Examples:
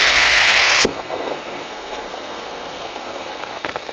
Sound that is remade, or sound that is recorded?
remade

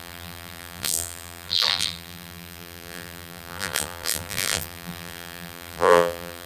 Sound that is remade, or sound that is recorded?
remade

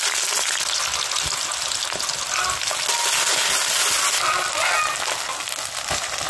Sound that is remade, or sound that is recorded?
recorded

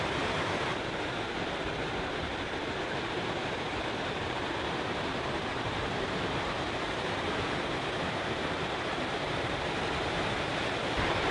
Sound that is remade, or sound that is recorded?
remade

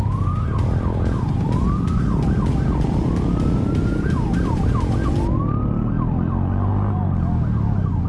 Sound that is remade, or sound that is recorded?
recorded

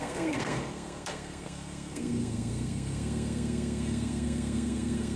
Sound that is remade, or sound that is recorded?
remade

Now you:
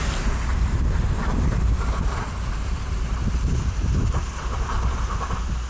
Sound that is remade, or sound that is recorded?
remade